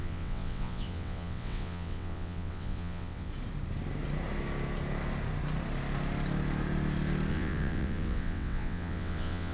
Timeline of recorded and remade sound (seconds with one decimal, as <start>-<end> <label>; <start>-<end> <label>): 0.0-3.3 remade; 3.3-7.3 recorded; 7.3-9.5 remade